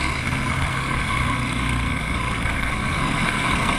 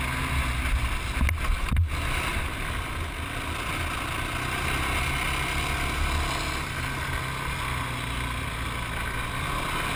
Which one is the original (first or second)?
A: second